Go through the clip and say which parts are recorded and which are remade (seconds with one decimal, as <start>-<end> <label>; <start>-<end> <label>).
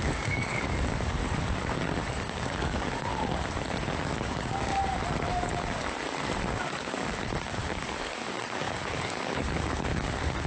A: 0.0-1.2 remade; 1.2-2.0 recorded; 2.0-3.1 remade; 3.1-4.0 recorded; 4.0-4.7 remade; 4.7-6.5 recorded; 6.5-10.5 remade